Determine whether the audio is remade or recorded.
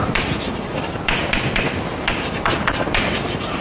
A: recorded